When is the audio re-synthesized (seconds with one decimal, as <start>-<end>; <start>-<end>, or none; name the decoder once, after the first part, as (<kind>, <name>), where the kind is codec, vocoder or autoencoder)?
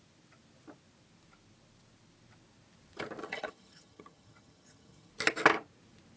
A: 3.2-5.1 (vocoder, HiFi-GAN)